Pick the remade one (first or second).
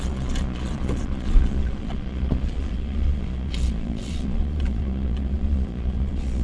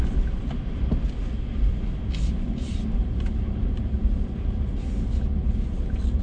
first